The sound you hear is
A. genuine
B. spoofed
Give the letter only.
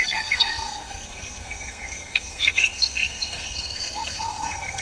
B